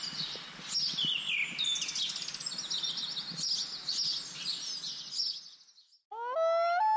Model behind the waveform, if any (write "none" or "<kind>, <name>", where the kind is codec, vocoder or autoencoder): none